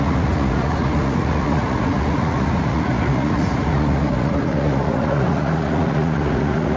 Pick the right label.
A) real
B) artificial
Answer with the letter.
B